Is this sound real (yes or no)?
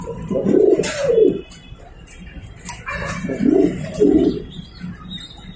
yes